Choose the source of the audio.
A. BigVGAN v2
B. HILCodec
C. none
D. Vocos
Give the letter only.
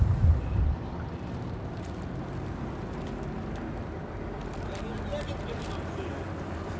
C